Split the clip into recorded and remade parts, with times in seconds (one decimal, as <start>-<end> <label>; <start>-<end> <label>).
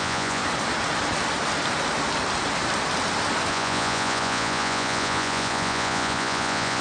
0.0-0.4 remade; 0.4-3.5 recorded; 3.5-6.8 remade